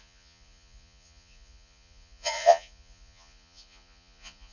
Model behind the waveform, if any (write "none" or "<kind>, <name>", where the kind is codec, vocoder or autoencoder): vocoder, Vocos